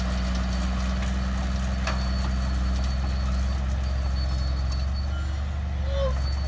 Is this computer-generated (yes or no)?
no